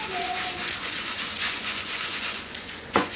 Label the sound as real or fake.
fake